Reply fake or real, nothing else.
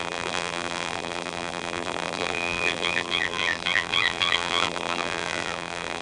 fake